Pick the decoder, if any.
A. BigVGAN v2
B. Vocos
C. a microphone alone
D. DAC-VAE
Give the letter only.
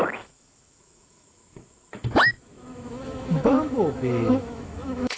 D